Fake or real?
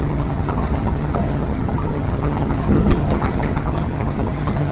fake